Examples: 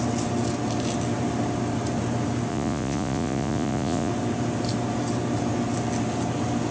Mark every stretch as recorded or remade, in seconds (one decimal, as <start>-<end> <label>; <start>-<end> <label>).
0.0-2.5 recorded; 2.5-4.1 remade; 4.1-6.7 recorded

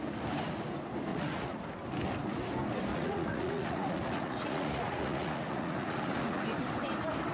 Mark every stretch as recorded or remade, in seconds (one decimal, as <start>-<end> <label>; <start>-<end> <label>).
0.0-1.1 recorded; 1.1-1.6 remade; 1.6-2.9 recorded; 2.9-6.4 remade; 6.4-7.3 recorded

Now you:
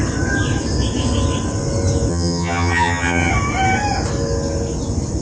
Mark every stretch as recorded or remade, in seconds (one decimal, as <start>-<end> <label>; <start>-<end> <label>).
0.0-2.1 recorded; 2.1-3.3 remade; 3.3-5.2 recorded